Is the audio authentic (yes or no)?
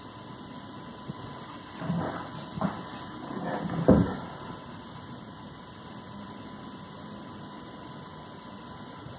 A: yes